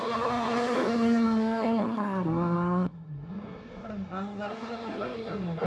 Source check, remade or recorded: remade